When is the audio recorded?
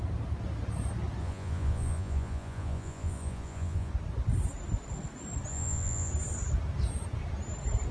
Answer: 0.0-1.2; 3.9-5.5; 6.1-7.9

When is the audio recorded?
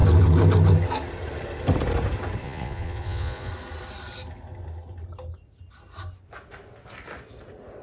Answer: 0.0-2.4; 3.5-7.8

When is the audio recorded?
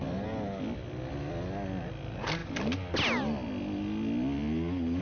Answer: 0.0-5.0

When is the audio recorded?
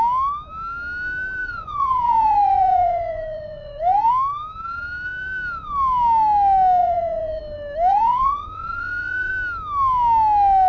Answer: 0.0-1.4; 4.1-6.8; 7.4-7.9; 9.3-10.7